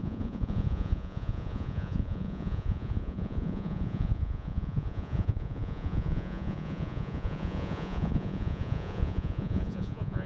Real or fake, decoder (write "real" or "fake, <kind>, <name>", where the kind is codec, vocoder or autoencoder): fake, vocoder, Vocos